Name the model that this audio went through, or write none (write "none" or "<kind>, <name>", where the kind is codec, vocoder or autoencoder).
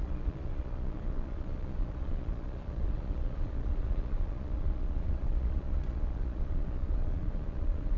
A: vocoder, Vocos